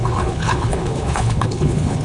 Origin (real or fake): fake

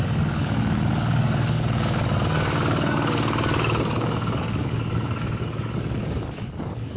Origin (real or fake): fake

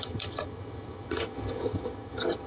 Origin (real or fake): fake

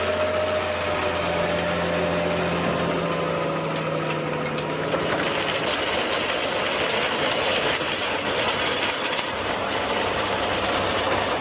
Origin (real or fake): real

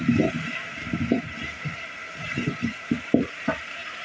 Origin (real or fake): fake